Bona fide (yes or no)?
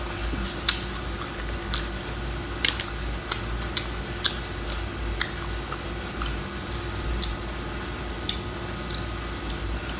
yes